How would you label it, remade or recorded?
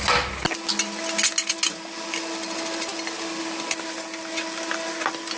recorded